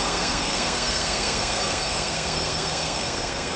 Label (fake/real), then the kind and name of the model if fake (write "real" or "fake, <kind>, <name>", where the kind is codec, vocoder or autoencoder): fake, codec, SNAC